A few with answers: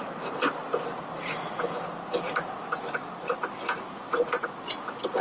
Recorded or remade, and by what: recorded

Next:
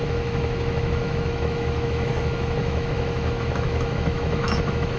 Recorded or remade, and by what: remade, autoencoder, DAC-VAE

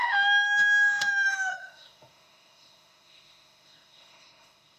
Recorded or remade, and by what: remade, autoencoder, DAC-VAE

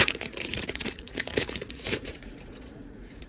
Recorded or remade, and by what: remade, vocoder, Vocos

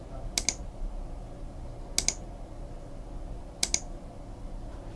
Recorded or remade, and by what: recorded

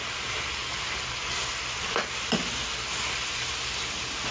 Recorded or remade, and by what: recorded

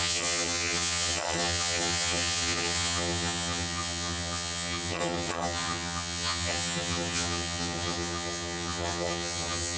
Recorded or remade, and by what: remade, vocoder, HiFi-GAN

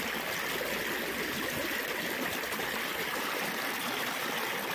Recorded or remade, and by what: recorded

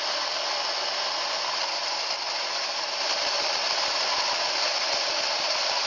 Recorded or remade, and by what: recorded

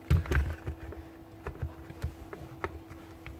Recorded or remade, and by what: recorded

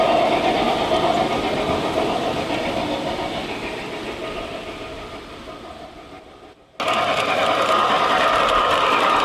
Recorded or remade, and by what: recorded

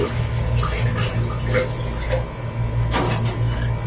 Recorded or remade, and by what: recorded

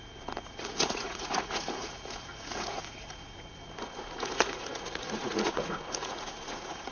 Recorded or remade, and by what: remade, vocoder, Vocos